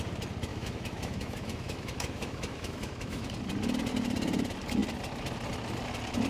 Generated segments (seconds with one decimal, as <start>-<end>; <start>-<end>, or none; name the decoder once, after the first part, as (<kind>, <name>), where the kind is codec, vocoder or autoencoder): 0.5-3.3 (autoencoder, DAC-VAE)